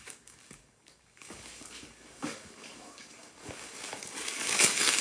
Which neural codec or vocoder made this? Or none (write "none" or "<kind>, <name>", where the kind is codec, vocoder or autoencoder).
codec, DAC